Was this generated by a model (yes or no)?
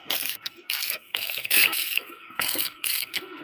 yes